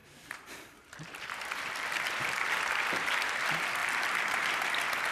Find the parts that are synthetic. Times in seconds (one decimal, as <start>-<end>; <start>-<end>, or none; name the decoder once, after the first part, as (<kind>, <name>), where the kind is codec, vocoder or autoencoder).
0.0-2.7 (vocoder, BigVGAN v2); 3.8-4.4